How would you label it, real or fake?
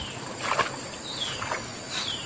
real